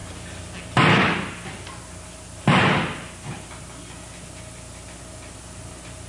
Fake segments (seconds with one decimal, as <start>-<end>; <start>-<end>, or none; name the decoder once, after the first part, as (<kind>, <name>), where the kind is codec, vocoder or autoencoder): none